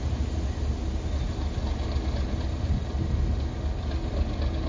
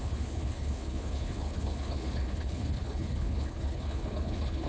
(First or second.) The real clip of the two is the first